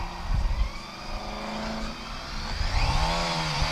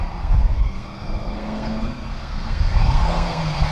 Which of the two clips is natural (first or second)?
first